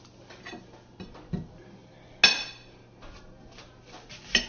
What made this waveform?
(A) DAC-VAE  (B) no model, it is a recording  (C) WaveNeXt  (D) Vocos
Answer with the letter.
B